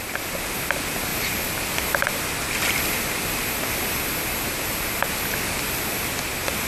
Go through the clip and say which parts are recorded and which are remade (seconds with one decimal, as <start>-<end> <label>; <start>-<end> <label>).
0.0-6.7 recorded